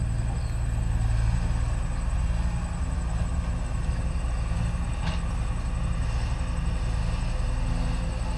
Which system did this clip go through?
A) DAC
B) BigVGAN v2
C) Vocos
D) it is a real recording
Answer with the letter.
D